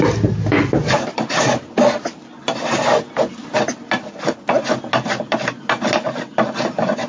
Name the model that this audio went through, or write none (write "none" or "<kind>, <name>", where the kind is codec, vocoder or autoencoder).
none